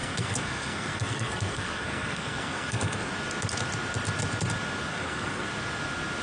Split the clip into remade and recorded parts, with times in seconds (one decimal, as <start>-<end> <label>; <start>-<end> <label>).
0.0-3.1 remade; 3.1-4.9 recorded; 4.9-5.5 remade; 5.5-6.2 recorded